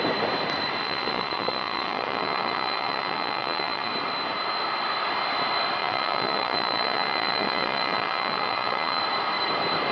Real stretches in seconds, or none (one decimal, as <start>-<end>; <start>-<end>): 0.0-0.8; 3.9-5.8; 9.0-9.9